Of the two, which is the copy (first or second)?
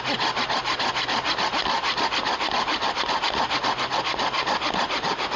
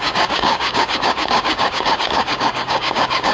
second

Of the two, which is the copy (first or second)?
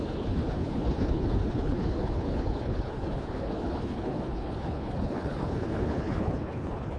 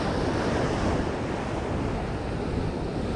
first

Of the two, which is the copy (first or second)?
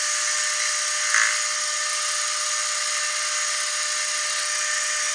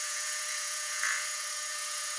second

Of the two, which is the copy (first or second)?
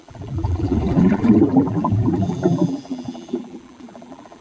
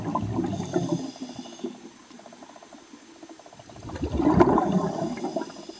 first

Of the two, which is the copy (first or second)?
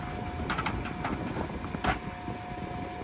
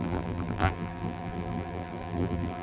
second